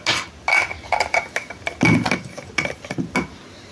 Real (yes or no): yes